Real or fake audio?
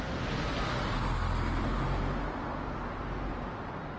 real